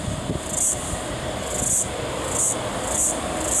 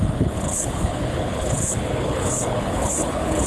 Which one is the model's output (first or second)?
second